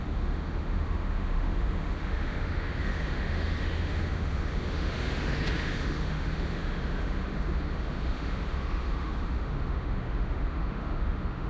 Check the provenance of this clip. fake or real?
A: fake